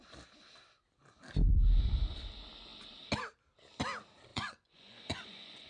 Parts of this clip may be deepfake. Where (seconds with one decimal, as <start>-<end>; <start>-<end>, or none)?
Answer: 4.3-5.7